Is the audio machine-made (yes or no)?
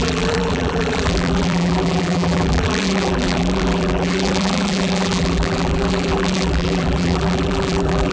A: yes